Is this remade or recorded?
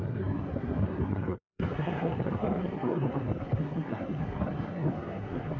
remade